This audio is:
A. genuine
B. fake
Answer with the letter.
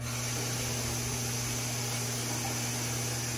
A